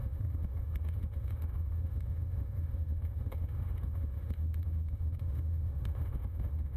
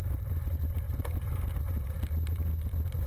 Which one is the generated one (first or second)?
first